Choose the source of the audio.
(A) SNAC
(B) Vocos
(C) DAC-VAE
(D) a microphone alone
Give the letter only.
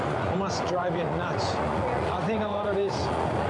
B